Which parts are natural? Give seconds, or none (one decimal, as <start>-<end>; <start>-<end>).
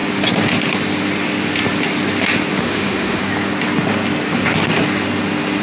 0.0-2.6; 3.2-5.6